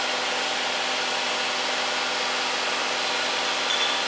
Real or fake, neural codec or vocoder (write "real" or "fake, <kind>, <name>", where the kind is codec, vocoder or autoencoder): real